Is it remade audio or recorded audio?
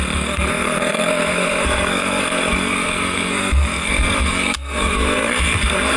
remade